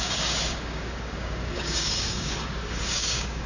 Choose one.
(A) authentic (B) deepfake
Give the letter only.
B